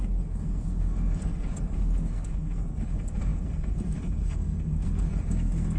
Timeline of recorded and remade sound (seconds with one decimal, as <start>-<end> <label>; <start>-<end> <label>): 0.0-5.8 remade